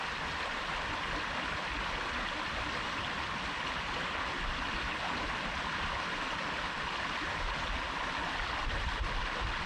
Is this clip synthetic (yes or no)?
no